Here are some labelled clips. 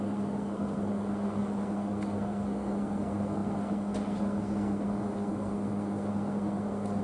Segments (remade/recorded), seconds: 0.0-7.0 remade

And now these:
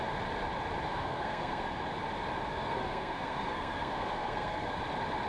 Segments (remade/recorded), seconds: 0.0-0.8 recorded; 0.8-1.8 remade; 1.8-2.5 recorded; 2.5-4.8 remade; 4.8-5.3 recorded

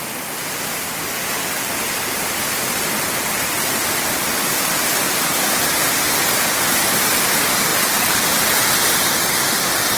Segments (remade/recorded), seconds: 0.0-10.0 recorded

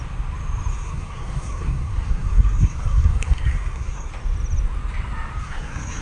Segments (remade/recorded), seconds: 0.0-0.7 recorded; 0.7-4.1 remade; 4.1-5.4 recorded; 5.4-6.0 remade

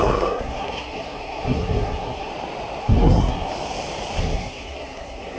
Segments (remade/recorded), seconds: 0.0-2.3 remade; 2.3-2.8 recorded; 2.8-3.5 remade; 3.5-4.2 recorded; 4.2-5.4 remade

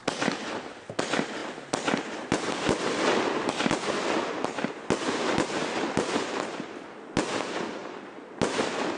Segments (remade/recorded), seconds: 0.0-9.0 recorded

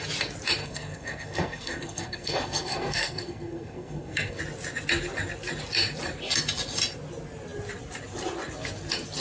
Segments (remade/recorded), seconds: 0.0-0.6 recorded; 0.6-4.4 remade; 4.4-9.2 recorded

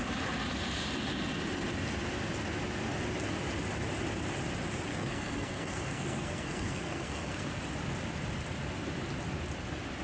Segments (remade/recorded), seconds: 0.0-4.9 recorded; 4.9-7.6 remade; 7.6-10.0 recorded